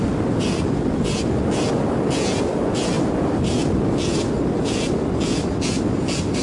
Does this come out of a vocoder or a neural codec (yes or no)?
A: yes